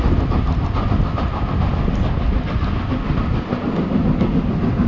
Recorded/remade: recorded